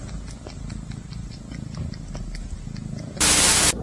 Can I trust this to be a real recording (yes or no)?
yes